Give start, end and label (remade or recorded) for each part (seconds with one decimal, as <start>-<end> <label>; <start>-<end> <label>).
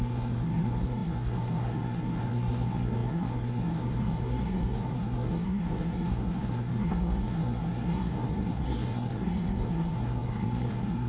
0.0-11.1 remade